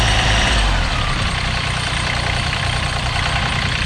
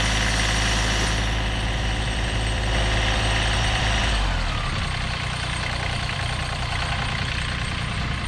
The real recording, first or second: second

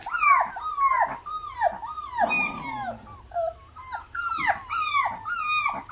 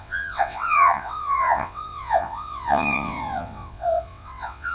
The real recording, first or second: first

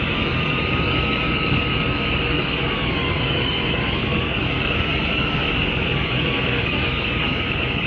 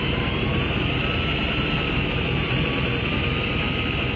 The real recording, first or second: second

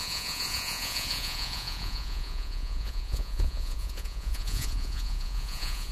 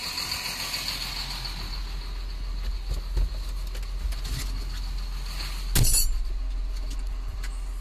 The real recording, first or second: second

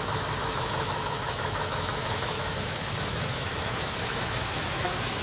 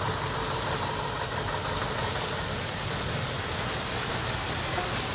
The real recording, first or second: second